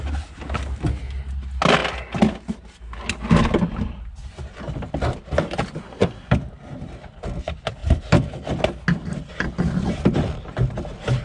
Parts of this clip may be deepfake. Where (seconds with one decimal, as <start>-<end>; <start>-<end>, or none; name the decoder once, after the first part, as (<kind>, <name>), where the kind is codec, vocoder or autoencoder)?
5.8-6.3 (codec, SNAC)